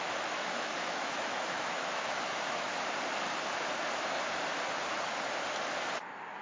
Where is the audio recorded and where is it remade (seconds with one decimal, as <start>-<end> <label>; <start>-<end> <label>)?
0.0-2.7 remade; 2.7-6.4 recorded